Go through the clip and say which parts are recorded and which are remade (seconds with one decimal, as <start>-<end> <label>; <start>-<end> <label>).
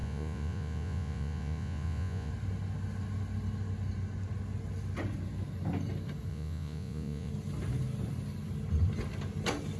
0.0-2.3 remade; 2.3-6.3 recorded; 6.3-7.3 remade; 7.3-9.8 recorded